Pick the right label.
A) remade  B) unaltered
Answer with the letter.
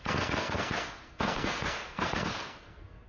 A